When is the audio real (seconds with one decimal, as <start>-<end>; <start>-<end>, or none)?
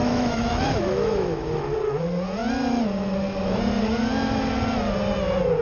1.6-5.6